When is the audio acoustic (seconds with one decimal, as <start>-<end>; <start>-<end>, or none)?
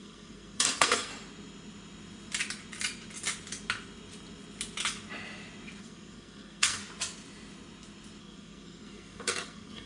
1.1-5.8; 6.8-8.2